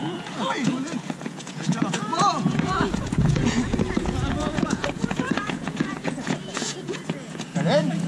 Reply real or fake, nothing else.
fake